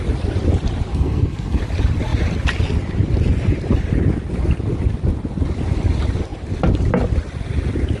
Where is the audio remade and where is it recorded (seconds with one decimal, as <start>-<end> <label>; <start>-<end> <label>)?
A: 0.0-0.9 recorded; 0.9-1.6 remade; 1.6-8.0 recorded